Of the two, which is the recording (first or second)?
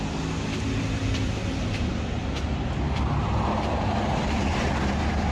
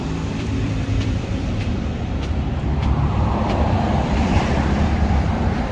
first